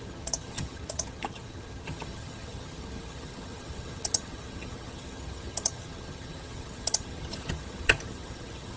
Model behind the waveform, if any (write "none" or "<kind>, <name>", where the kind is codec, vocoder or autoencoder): vocoder, HiFi-GAN